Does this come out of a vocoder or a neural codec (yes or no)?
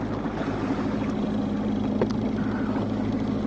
no